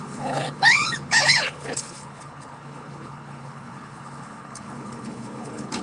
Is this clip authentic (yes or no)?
no